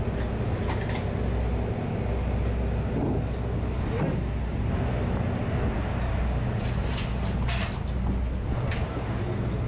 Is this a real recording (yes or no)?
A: yes